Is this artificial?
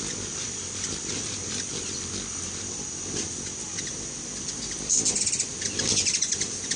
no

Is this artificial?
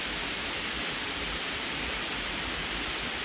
no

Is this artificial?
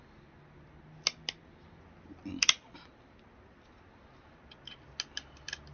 no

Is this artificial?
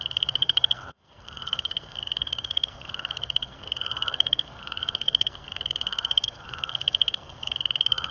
yes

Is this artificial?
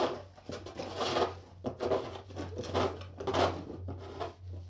no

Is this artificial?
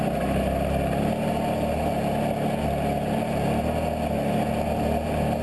no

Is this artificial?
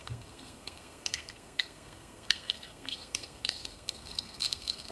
yes